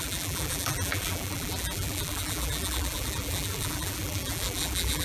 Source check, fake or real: fake